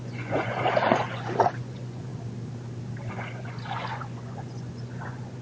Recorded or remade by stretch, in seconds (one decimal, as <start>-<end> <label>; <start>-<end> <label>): 0.0-2.1 remade; 2.1-3.1 recorded; 3.1-5.4 remade